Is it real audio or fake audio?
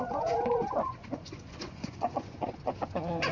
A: fake